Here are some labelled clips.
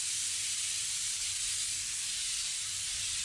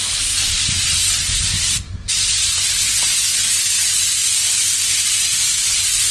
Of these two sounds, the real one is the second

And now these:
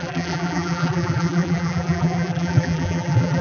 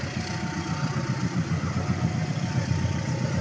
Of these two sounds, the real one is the second